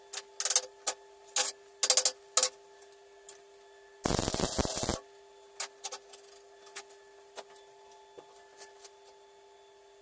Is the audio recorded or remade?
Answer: recorded